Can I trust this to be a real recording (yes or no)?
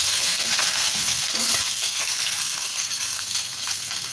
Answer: no